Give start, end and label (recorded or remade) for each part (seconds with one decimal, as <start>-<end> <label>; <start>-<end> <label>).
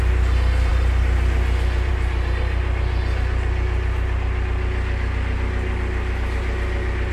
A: 0.0-7.1 recorded